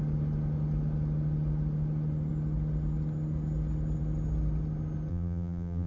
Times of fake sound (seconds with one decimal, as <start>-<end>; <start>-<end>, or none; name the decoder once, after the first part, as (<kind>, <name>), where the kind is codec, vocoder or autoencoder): 5.1-5.9 (vocoder, BigVGAN v2)